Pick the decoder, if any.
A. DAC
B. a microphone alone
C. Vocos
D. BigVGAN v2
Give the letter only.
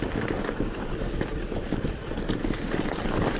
D